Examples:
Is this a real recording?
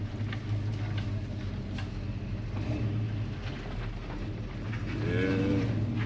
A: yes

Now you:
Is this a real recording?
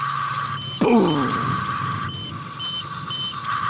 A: yes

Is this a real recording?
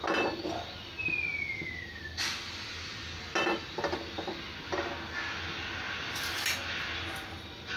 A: yes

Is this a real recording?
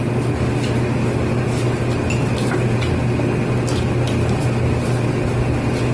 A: yes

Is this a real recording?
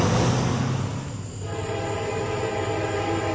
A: yes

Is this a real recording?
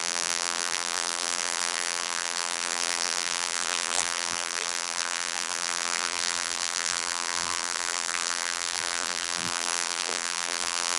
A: no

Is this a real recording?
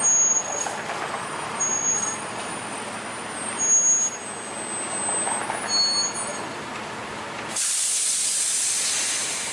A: yes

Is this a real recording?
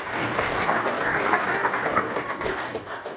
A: no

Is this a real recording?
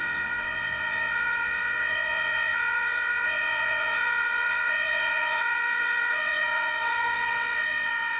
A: no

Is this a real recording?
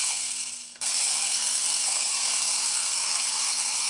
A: no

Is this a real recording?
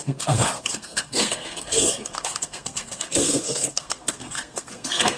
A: no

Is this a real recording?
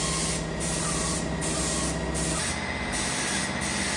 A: yes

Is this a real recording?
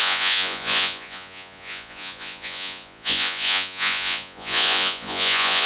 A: no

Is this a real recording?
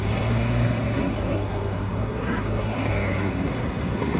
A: no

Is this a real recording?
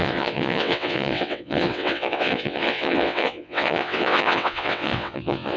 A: no